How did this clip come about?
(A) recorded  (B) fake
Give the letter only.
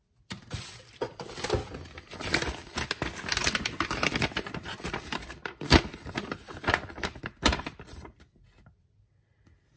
A